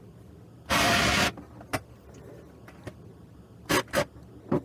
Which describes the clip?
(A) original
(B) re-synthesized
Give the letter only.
A